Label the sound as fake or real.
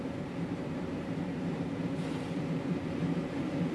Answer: fake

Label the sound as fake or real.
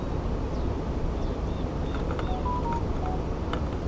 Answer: real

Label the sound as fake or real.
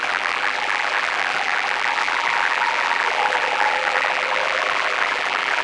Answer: fake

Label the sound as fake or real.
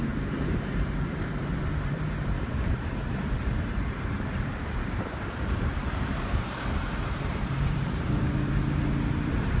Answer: fake